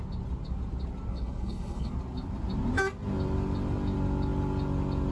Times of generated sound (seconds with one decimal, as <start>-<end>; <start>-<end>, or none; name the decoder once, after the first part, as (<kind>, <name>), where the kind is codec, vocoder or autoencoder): 1.1-1.9 (codec, HILCodec)